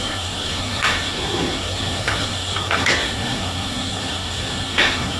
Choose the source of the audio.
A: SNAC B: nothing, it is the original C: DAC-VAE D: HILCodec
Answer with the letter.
A